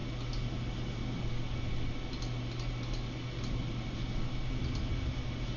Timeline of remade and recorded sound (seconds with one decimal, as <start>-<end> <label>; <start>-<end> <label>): 0.0-5.6 recorded